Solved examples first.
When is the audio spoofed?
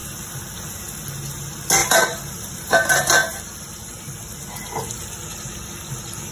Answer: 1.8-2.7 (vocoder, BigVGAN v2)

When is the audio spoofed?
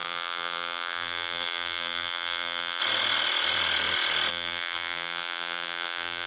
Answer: 0.0-2.8 (vocoder, BigVGAN v2); 4.3-6.3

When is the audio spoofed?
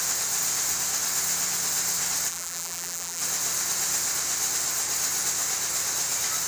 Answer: 2.3-3.2 (vocoder, BigVGAN v2)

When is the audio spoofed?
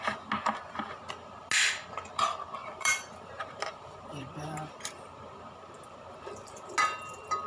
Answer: 2.6-6.7 (vocoder, BigVGAN v2)